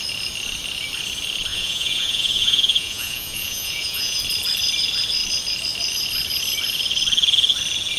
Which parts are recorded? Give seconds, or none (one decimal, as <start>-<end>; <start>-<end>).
0.0-1.5; 4.2-8.0

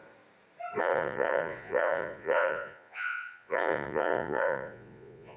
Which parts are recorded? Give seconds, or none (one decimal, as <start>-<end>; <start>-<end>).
0.0-0.8

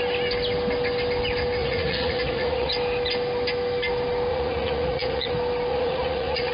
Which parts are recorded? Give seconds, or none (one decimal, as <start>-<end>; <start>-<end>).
0.0-1.6; 2.7-4.3; 5.3-5.7